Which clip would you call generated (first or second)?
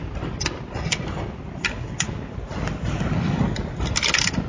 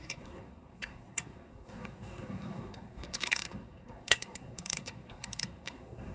second